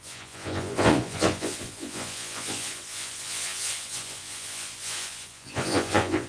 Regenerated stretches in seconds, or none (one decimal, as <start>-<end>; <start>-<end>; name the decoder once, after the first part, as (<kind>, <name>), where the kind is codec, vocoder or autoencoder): 0.0-6.3 (vocoder, Vocos)